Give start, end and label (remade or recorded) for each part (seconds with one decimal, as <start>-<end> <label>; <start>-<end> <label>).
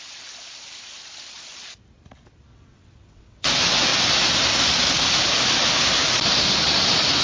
0.0-2.5 recorded; 2.5-3.5 remade; 3.5-7.2 recorded